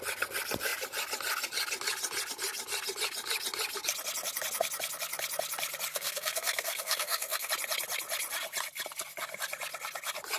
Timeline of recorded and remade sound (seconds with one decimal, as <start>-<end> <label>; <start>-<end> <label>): 0.0-5.9 recorded; 5.9-7.5 remade; 7.5-10.4 recorded